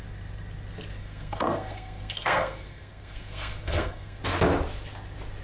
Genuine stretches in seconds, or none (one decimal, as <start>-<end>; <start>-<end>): 0.0-1.0; 4.2-5.4